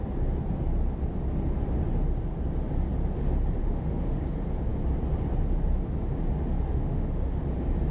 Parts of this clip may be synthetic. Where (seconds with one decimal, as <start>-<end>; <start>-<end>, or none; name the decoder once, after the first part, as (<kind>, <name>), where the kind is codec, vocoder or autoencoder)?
3.6-4.2 (autoencoder, DAC-VAE); 6.7-7.4